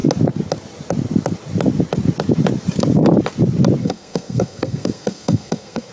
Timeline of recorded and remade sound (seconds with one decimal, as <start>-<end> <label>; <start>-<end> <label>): 0.0-3.8 recorded; 3.8-5.9 remade